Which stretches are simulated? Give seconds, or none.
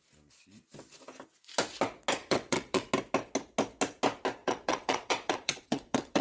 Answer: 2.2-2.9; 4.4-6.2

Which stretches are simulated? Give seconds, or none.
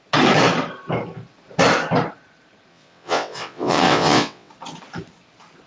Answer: 2.7-4.5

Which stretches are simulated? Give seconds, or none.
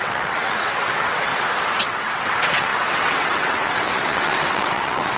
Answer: 0.0-1.3; 1.8-5.2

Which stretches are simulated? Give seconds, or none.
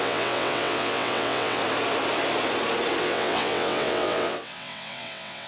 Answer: 0.0-1.6; 3.0-5.5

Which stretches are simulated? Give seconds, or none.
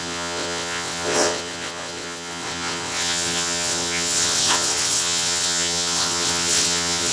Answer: 0.0-7.1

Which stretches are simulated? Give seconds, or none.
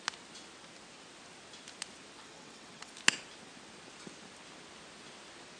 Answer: 2.2-2.9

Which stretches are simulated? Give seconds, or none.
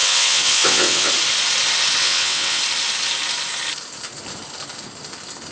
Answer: 0.0-1.1; 2.0-2.6